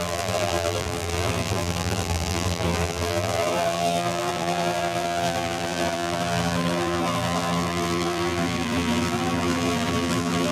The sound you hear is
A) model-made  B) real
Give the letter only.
A